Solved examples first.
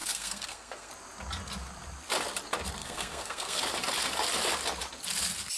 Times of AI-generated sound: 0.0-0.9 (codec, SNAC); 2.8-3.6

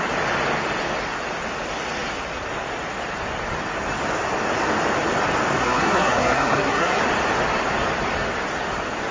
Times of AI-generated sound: 5.6-7.0 (codec, SNAC)

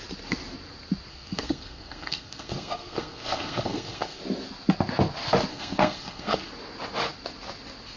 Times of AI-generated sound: 1.1-4.2 (codec, SNAC); 5.5-6.5

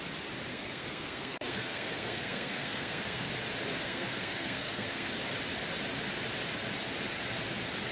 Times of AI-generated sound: 0.5-3.3 (codec, SNAC); 3.7-5.1